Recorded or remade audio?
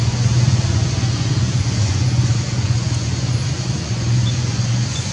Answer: remade